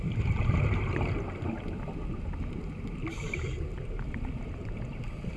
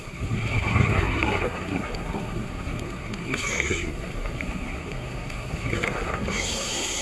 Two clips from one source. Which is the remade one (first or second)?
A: second